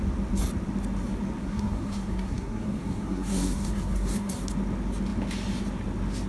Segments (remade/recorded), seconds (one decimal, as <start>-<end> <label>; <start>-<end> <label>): 0.0-1.4 recorded; 1.4-4.4 remade; 4.4-6.3 recorded